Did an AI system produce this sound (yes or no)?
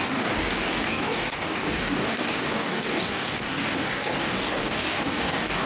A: yes